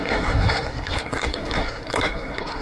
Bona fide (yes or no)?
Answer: no